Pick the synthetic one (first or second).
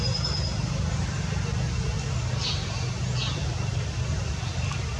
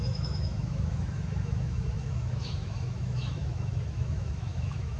second